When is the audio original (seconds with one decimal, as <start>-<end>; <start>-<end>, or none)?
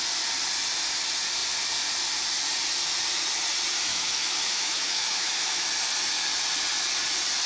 0.0-3.9; 5.7-7.5